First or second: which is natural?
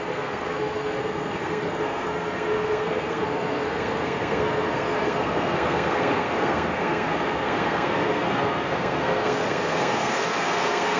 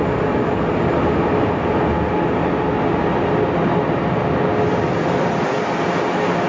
second